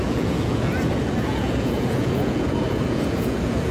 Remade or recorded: remade